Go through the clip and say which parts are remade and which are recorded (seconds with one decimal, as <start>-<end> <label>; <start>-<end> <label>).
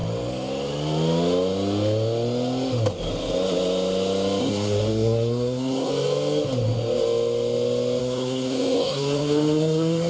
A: 0.0-4.4 recorded; 4.4-5.9 remade; 5.9-8.0 recorded; 8.0-10.1 remade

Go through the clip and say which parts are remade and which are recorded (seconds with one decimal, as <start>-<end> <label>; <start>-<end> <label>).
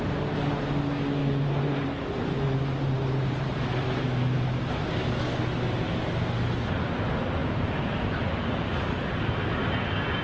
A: 0.0-1.2 recorded; 1.2-4.6 remade; 4.6-7.4 recorded; 7.4-9.7 remade; 9.7-10.2 recorded